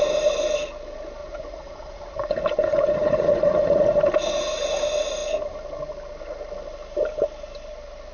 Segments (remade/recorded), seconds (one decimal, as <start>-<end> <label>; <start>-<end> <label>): 0.0-1.2 recorded; 1.2-4.0 remade; 4.0-8.1 recorded